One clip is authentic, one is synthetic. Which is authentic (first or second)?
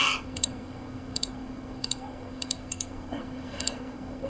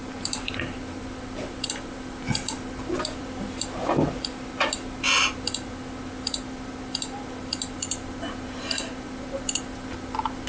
second